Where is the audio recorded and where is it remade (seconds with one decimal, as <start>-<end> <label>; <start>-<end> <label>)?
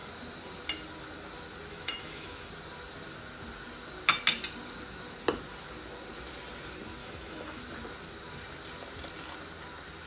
0.0-1.7 recorded; 1.7-2.5 remade; 2.5-7.0 recorded; 7.0-7.6 remade; 7.6-10.1 recorded